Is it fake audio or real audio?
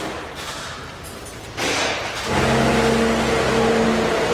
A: real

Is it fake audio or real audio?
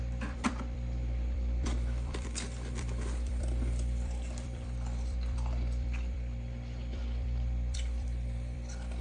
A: fake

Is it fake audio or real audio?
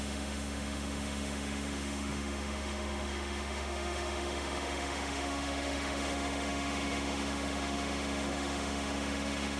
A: fake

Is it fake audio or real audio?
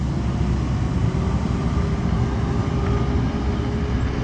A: real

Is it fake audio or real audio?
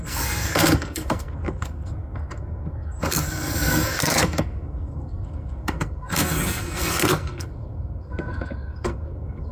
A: fake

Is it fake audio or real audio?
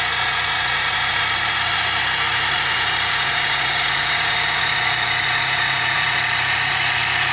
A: fake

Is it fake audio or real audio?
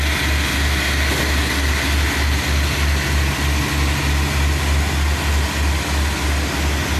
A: real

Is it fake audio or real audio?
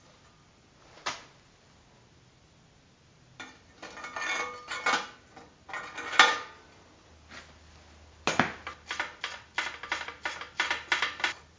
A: real